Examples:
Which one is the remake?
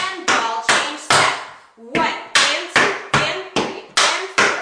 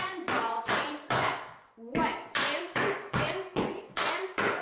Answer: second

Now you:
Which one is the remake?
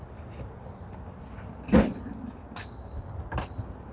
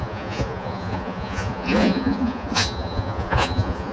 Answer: second